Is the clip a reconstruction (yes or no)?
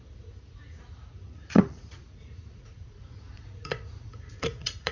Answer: yes